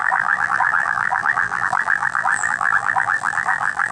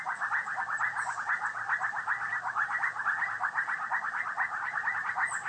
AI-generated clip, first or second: first